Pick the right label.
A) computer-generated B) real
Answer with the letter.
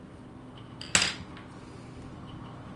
B